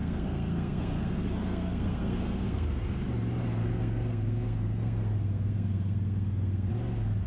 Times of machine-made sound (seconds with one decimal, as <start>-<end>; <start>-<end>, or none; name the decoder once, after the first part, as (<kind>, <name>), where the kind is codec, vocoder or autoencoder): 0.0-2.9 (codec, SNAC); 3.6-6.7